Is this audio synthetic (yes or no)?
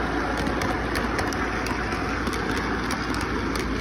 no